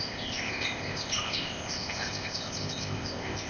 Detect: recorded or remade remade